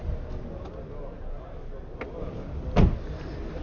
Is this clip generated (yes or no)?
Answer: no